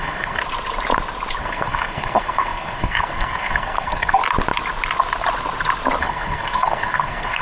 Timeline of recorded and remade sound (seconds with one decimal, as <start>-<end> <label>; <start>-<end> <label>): 0.0-0.4 remade; 0.4-1.4 recorded; 1.4-4.2 remade; 4.2-6.0 recorded; 6.0-7.4 remade

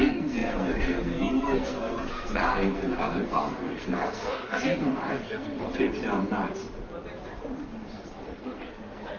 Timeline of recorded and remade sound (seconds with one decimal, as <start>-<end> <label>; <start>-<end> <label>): 0.0-6.0 remade; 6.0-7.6 recorded; 7.6-9.2 remade